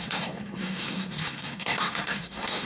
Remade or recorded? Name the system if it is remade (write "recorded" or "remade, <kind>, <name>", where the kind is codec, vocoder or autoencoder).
remade, codec, SNAC